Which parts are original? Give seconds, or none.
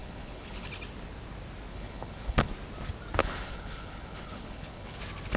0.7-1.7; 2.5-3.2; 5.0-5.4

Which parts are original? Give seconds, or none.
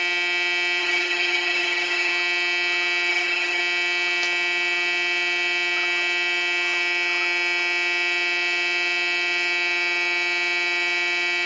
0.0-0.8; 2.1-3.1; 3.6-11.5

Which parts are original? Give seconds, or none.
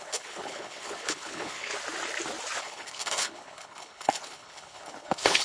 1.7-2.6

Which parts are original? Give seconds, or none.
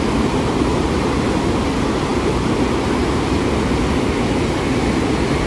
0.0-5.5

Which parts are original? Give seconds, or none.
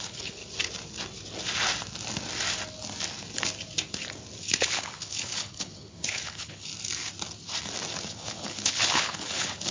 0.4-4.4; 6.7-8.1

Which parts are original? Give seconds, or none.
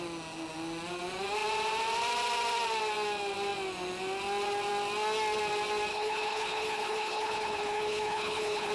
0.0-5.9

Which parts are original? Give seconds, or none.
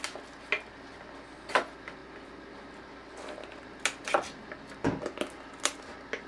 0.0-6.3